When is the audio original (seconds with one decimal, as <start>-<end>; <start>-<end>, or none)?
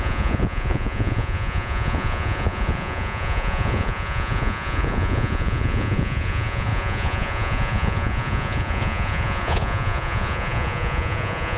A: none